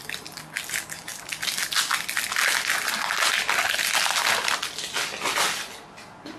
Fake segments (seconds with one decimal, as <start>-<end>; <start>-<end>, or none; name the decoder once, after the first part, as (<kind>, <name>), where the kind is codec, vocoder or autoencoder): none

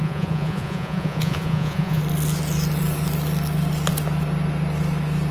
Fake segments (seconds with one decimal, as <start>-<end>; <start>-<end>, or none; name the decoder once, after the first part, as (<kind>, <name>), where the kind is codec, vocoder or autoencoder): 0.0-2.0 (vocoder, Vocos)

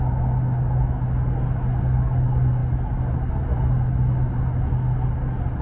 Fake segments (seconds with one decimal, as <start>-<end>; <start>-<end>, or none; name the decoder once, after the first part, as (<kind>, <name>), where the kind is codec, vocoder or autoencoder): none

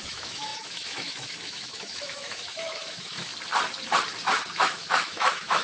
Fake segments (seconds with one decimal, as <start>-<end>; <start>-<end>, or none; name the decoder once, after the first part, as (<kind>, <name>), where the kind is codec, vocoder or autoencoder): 0.0-3.3 (autoencoder, DAC-VAE); 4.5-5.6

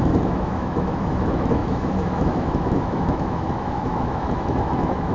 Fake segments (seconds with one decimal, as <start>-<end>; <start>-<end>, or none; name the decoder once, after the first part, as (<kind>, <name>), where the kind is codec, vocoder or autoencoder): 0.0-5.1 (autoencoder, DAC-VAE)

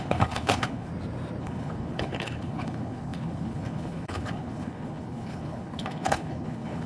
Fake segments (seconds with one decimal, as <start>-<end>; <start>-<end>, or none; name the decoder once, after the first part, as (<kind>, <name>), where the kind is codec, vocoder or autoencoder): 0.0-0.9 (codec, HILCodec); 1.4-6.9

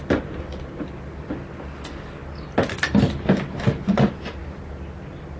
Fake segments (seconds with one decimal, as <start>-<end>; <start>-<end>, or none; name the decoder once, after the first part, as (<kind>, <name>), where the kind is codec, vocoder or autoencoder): none